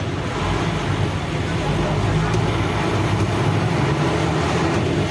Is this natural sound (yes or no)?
yes